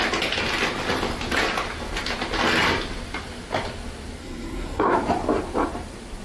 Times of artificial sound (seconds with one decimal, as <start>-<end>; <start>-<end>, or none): 4.2-4.9